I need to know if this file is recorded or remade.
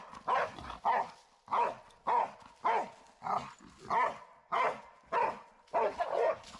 recorded